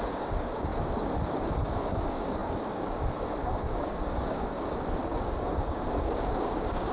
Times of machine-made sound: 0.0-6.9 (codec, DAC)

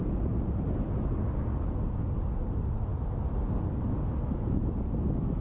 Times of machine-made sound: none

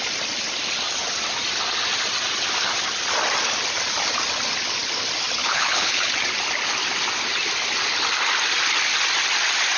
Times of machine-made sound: 5.4-6.1 (codec, HILCodec)

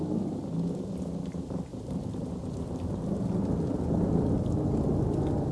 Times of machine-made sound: none

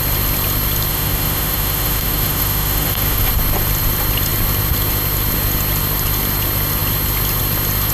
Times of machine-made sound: 0.9-3.3 (autoencoder, DAC-VAE)

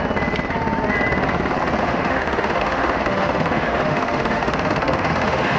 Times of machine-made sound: 1.8-5.6 (autoencoder, DAC-VAE)

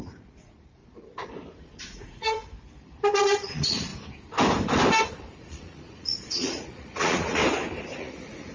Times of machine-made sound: 0.0-0.8 (vocoder, Vocos); 1.6-2.4; 3.5-3.9; 5.4-7.4; 8.0-8.5